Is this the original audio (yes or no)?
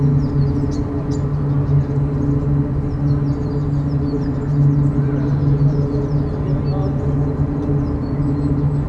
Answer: yes